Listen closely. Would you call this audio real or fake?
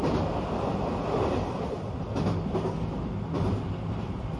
real